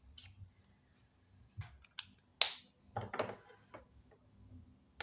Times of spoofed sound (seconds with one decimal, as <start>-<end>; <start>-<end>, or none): none